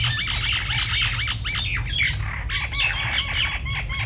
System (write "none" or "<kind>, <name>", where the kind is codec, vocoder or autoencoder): none